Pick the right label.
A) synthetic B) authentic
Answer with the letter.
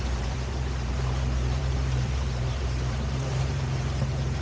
A